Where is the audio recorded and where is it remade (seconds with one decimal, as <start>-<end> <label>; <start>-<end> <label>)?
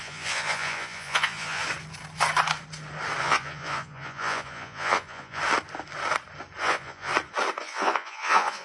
0.0-1.6 remade; 1.6-3.2 recorded; 3.2-5.4 remade; 5.4-6.6 recorded; 6.6-7.1 remade; 7.1-7.6 recorded; 7.6-8.6 remade